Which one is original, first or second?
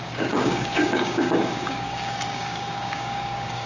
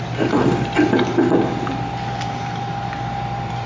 second